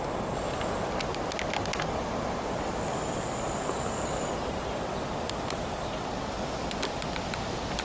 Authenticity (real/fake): real